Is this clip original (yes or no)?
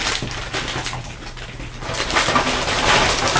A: yes